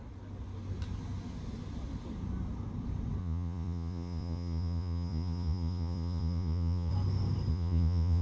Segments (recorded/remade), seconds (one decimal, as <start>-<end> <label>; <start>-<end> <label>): 0.0-3.2 recorded; 3.2-6.9 remade; 6.9-7.5 recorded; 7.5-8.2 remade